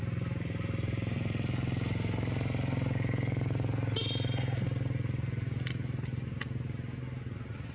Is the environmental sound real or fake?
real